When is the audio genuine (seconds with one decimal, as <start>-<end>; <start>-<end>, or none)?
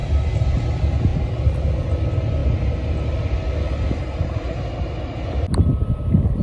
0.0-6.4